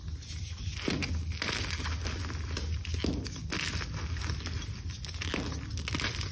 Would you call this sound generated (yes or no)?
no